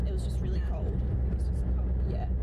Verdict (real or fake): real